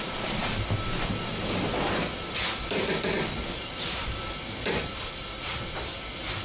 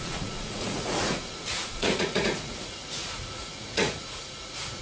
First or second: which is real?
first